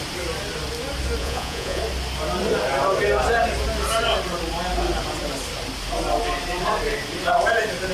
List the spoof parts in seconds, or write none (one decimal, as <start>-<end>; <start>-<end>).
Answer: 1.2-1.8